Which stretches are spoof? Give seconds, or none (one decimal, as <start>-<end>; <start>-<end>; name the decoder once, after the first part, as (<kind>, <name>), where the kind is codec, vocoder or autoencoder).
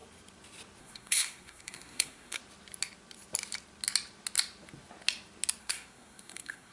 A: 0.8-2.4 (codec, SNAC); 5.6-6.7